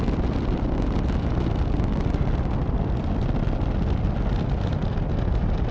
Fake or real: real